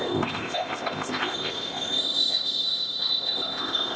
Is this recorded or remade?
remade